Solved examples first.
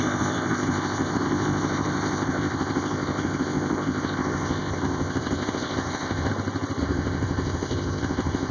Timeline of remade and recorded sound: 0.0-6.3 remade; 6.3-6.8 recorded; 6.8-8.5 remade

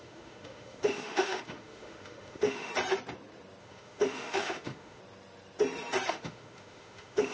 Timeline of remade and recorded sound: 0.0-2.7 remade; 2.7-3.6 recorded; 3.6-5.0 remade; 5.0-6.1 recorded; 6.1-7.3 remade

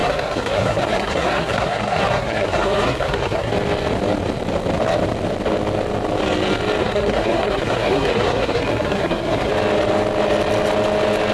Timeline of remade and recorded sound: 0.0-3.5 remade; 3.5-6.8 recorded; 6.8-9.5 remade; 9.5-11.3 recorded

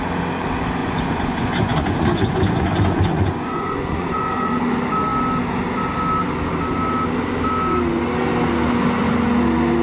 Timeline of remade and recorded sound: 0.0-0.8 recorded; 0.8-4.6 remade; 4.6-9.8 recorded

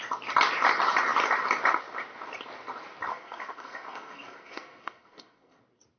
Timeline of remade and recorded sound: 0.0-3.1 recorded; 3.1-5.6 remade; 5.6-6.0 recorded